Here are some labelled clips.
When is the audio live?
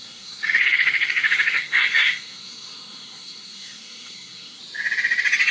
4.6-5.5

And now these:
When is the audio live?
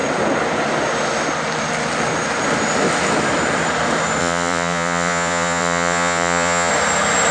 0.0-4.2; 6.7-7.3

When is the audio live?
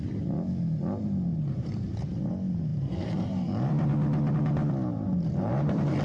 0.0-1.3; 2.3-2.7; 3.9-4.9